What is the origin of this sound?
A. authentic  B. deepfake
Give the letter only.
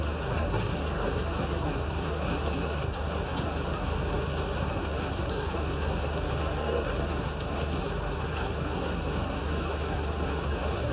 B